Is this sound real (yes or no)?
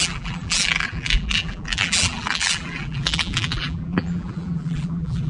no